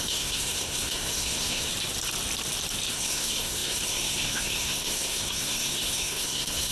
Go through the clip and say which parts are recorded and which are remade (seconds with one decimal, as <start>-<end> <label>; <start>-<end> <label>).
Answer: 0.0-1.7 remade; 1.7-2.9 recorded; 2.9-6.7 remade